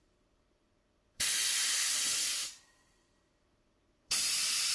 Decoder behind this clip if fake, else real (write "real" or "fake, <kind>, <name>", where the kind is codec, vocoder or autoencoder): fake, vocoder, BigVGAN v2